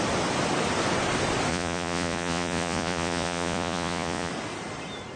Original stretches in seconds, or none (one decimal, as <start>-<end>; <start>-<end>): 0.0-1.5; 4.3-5.2